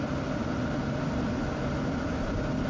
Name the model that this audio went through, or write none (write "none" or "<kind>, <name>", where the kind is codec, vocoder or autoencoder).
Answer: none